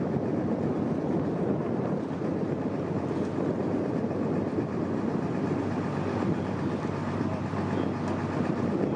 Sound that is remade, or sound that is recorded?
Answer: recorded